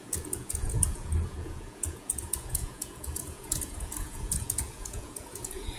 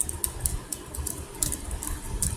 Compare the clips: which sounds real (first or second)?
second